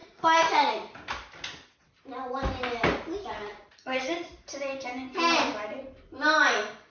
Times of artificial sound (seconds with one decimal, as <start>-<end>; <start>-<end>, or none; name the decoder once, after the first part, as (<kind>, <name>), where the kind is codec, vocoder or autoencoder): 0.0-0.7 (vocoder, Vocos); 3.5-4.3